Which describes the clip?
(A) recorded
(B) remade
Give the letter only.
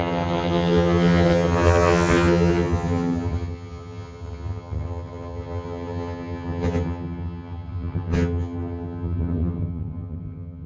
B